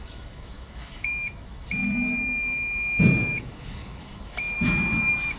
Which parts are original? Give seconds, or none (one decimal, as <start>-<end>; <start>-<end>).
none